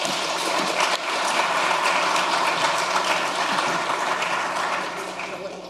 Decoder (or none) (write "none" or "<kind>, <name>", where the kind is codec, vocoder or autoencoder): vocoder, BigVGAN v2